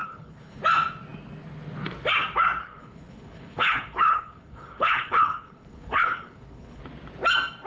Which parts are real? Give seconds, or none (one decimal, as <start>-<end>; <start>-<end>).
0.6-2.6; 6.8-7.7